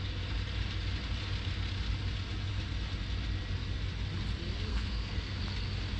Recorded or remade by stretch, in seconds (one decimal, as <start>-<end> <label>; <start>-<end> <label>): 0.0-4.7 recorded; 4.7-5.4 remade; 5.4-6.0 recorded